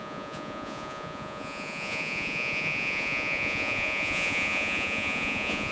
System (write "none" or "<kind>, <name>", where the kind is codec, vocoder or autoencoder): vocoder, Vocos